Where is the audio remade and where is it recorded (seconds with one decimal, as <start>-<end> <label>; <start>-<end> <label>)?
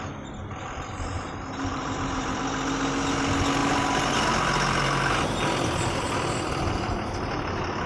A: 0.0-1.7 recorded; 1.7-2.4 remade; 2.4-7.9 recorded